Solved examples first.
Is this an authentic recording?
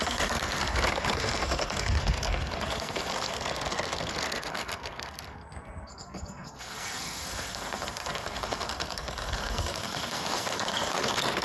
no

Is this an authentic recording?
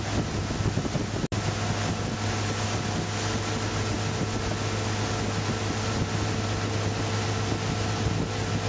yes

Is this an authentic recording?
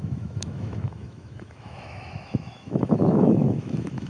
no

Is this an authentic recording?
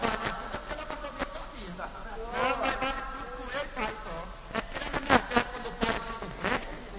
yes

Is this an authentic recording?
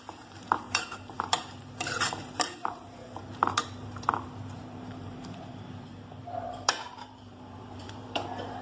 no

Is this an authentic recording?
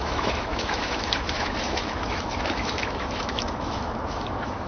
no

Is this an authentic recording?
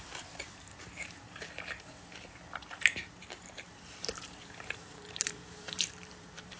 no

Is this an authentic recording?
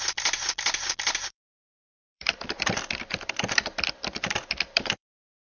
no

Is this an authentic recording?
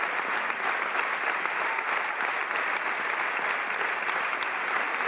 yes